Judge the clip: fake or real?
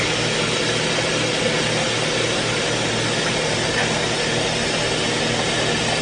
real